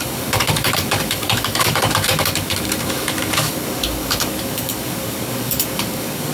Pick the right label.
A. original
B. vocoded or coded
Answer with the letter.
B